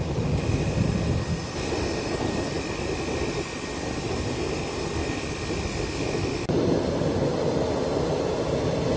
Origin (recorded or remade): recorded